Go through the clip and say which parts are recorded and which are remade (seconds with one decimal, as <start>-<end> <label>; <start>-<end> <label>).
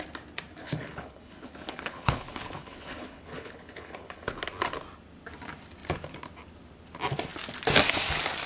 0.0-0.6 recorded; 0.6-4.4 remade; 4.4-8.5 recorded